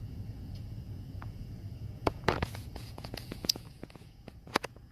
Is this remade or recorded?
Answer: remade